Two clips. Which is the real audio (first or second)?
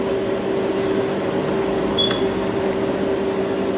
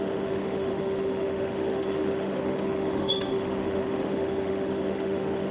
first